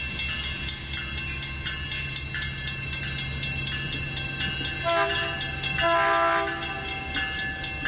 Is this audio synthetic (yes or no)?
no